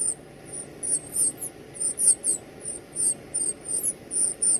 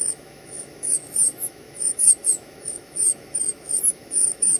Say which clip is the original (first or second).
first